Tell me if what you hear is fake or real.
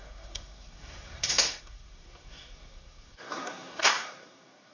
fake